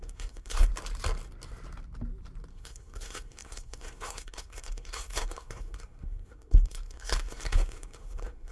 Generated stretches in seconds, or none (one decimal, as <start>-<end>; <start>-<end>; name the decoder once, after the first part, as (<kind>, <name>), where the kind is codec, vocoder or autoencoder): 0.0-0.7 (codec, SNAC); 2.5-8.5